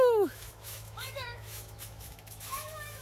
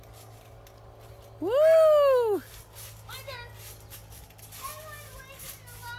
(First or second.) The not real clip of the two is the first